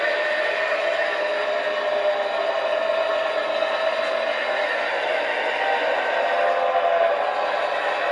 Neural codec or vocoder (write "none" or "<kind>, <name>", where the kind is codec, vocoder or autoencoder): none